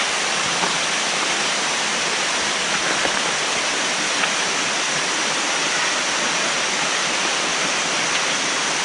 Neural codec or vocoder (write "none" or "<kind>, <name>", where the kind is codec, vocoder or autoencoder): none